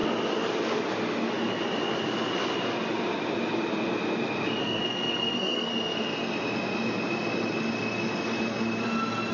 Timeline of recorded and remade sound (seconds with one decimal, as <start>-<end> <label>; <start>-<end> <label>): 0.0-4.6 recorded; 4.6-5.7 remade; 5.7-9.3 recorded